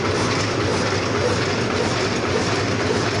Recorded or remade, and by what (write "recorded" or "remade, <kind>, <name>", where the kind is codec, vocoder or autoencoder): recorded